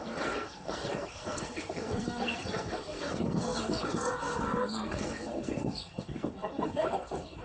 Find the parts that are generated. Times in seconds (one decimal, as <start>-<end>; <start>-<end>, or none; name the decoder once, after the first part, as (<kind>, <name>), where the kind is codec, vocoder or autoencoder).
0.0-7.4 (codec, SNAC)